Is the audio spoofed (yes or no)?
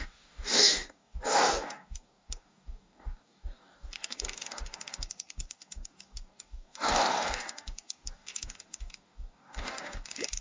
yes